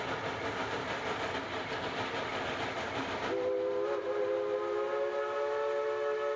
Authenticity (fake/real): real